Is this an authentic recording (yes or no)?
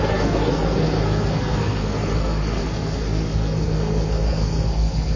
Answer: no